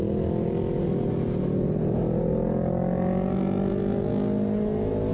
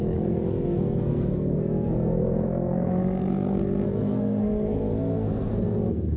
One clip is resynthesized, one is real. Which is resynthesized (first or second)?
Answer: second